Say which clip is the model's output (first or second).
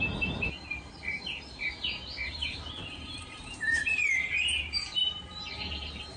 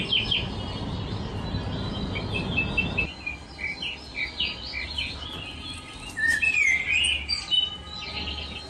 first